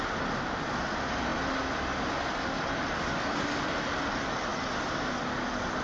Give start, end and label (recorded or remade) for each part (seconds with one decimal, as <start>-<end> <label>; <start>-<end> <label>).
0.0-5.8 recorded